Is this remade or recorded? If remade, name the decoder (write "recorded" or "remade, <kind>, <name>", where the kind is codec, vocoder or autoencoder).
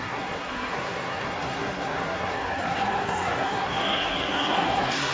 remade, codec, SNAC